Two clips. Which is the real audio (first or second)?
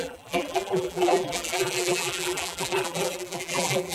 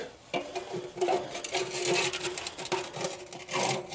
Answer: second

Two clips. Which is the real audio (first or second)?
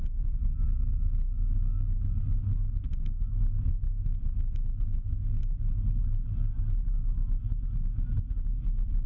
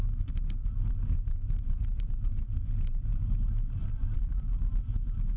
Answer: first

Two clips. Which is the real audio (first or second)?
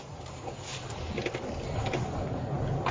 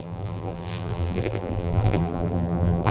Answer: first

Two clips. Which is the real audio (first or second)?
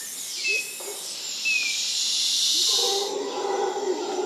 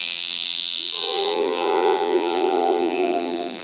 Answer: first